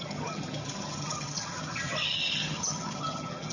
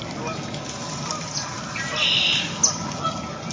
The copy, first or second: first